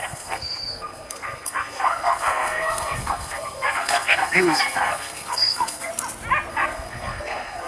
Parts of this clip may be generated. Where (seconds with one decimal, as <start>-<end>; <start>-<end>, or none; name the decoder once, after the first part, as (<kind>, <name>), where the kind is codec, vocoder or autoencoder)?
0.0-5.9 (codec, SNAC); 6.5-7.7